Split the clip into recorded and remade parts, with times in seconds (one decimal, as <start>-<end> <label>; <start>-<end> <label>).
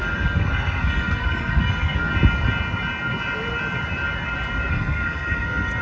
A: 0.0-2.1 remade; 2.1-4.7 recorded; 4.7-5.8 remade